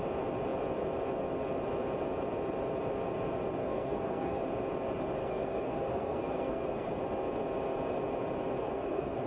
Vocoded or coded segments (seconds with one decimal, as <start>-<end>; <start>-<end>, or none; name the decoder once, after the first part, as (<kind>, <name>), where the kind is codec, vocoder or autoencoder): 3.6-4.4 (codec, SNAC); 5.2-7.0; 8.6-9.3